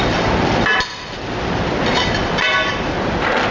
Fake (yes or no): yes